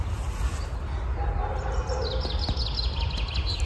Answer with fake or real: real